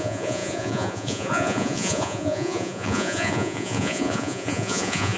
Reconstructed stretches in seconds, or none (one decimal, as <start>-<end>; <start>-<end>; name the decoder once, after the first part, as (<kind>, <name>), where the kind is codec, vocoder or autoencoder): 0.0-5.2 (vocoder, Vocos)